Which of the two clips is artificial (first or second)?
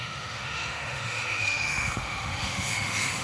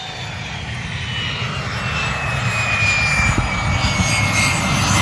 first